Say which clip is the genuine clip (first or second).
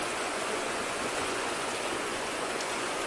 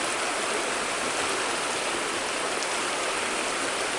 second